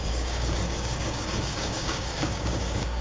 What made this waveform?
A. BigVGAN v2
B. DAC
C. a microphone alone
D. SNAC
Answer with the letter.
B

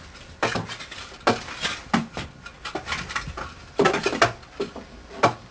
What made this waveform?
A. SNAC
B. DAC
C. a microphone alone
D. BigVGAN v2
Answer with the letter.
C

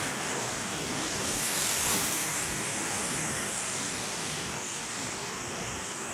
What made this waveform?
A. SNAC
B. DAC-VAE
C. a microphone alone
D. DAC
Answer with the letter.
D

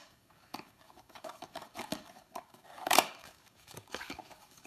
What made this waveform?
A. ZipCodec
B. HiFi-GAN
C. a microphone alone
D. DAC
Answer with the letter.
D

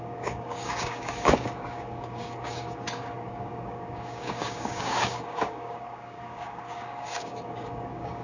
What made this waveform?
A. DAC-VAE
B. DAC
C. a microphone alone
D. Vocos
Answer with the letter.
B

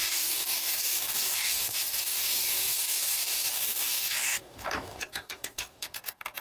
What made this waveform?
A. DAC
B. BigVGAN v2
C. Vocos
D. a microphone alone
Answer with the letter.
A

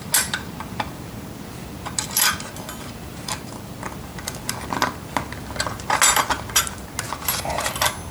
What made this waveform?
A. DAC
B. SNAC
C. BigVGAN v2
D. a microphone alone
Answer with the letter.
D